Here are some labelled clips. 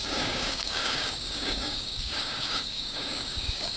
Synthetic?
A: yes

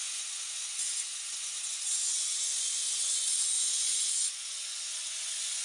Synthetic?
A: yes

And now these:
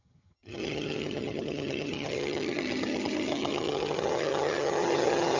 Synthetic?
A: yes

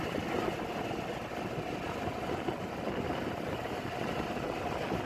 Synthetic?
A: no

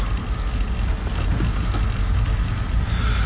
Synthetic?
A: no